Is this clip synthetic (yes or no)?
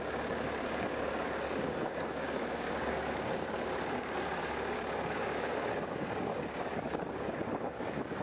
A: yes